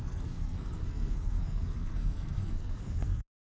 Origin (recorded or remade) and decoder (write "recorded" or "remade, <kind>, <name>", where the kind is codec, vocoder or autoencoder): remade, codec, SNAC